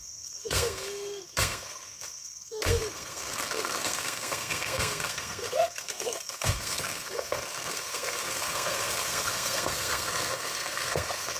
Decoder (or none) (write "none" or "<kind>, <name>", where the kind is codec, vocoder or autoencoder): codec, SNAC